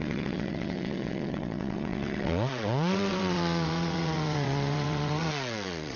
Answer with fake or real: fake